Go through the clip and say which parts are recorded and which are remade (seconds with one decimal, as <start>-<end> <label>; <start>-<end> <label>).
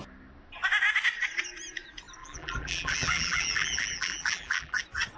0.0-2.2 recorded; 2.2-4.8 remade; 4.8-5.2 recorded